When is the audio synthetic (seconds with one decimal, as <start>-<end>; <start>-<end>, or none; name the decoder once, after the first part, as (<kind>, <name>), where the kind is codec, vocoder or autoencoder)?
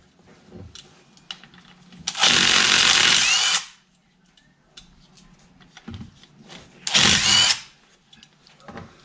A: none